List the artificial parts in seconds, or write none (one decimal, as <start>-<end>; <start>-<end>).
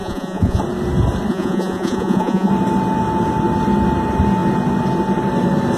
0.0-0.6; 1.3-2.5